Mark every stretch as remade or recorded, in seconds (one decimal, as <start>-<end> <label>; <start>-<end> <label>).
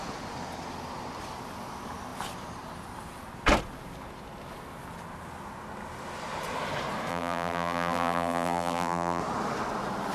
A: 0.0-7.1 recorded; 7.1-9.2 remade; 9.2-10.1 recorded